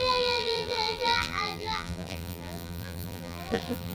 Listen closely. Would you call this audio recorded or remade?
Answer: remade